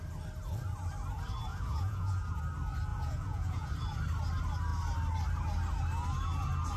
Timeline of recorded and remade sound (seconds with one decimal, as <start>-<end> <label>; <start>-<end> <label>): 0.0-1.5 recorded; 1.5-2.4 remade; 2.4-2.9 recorded; 2.9-3.7 remade; 3.7-6.8 recorded